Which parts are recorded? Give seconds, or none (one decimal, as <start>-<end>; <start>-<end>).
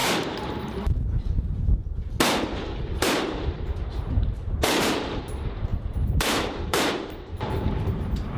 1.8-2.9